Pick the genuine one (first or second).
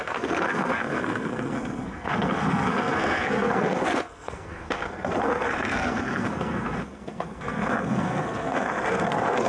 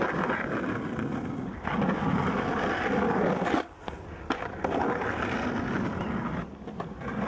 second